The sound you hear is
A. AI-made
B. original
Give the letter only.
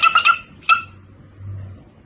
B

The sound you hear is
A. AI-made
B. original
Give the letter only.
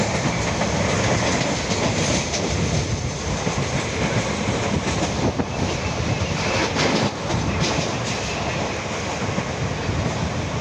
B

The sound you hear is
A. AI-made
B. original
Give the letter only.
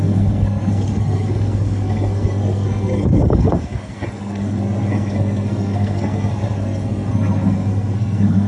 A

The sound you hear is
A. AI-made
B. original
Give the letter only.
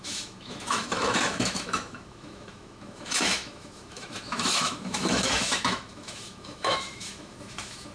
A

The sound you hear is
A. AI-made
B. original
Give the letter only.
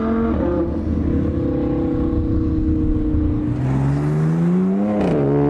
B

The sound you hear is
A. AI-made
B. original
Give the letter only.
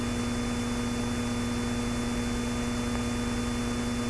B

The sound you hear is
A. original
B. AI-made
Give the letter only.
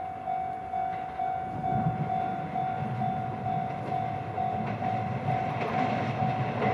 A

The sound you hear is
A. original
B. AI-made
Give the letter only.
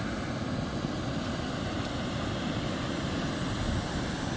A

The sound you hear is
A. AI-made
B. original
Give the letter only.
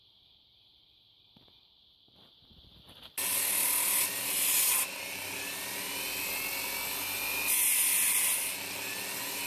B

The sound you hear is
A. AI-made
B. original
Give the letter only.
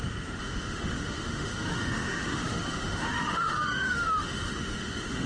A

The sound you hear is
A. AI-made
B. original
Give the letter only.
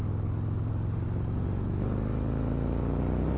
B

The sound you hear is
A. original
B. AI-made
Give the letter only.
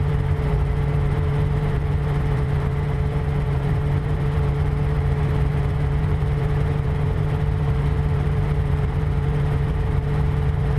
B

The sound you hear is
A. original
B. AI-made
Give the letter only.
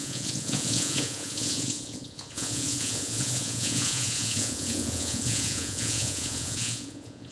B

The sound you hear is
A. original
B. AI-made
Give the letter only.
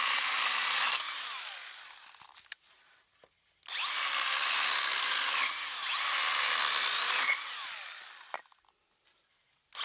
A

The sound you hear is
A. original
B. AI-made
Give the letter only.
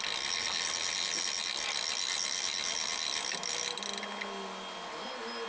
A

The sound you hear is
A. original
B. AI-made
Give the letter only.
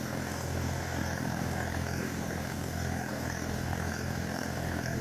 B